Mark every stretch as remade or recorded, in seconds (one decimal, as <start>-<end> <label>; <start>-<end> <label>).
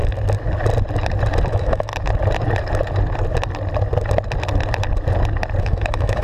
0.0-1.5 recorded; 1.5-1.9 remade; 1.9-5.6 recorded; 5.6-6.2 remade